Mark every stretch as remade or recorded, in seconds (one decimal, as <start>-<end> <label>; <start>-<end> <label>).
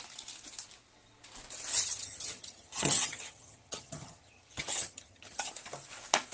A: 0.0-1.7 recorded; 1.7-5.5 remade; 5.5-6.3 recorded